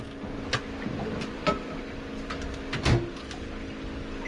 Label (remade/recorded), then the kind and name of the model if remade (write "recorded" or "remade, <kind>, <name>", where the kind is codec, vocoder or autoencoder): recorded